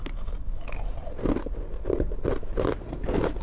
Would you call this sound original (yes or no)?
yes